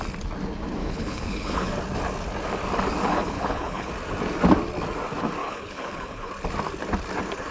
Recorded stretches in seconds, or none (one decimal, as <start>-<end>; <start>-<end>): 0.0-0.8; 1.7-3.1; 3.9-5.4; 6.3-7.5